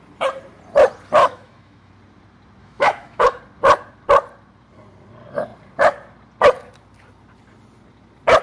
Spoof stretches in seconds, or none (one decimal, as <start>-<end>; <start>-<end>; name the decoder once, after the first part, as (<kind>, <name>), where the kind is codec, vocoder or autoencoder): 1.2-1.9 (autoencoder, DAC-VAE); 2.6-3.4